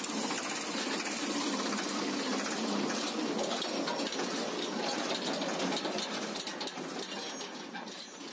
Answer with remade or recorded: recorded